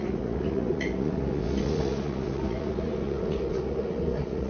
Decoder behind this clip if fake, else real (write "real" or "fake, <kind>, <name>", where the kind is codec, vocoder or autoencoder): fake, vocoder, Vocos